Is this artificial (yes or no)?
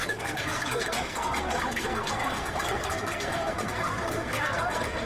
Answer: yes